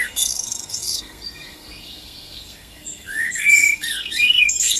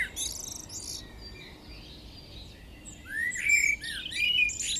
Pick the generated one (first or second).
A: first